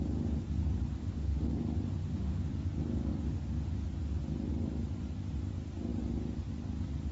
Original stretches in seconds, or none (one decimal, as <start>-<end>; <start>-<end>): 0.0-1.0; 1.5-2.0; 2.5-7.1